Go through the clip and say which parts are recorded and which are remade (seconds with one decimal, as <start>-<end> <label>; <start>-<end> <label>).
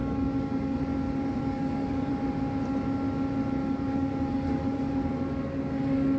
0.0-0.8 remade; 0.8-1.4 recorded; 1.4-2.1 remade; 2.1-3.6 recorded; 3.6-4.9 remade; 4.9-6.2 recorded